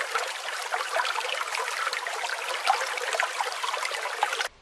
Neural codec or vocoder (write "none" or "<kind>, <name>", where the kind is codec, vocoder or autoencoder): none